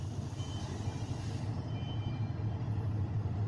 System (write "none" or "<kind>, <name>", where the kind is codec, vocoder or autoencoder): none